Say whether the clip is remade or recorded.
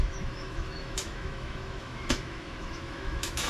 remade